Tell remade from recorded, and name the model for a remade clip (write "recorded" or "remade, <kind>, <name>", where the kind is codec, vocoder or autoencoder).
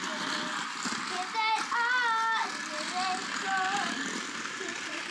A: recorded